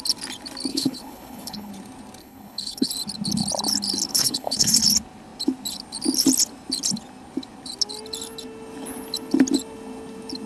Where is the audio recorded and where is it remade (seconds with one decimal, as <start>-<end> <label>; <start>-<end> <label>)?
0.0-0.7 recorded; 0.7-1.7 remade; 1.7-2.2 recorded; 2.2-2.9 remade; 2.9-4.1 recorded; 4.1-4.8 remade; 4.8-10.5 recorded